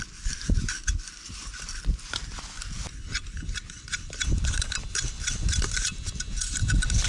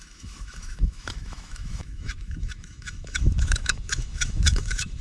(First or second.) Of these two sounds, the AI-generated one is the second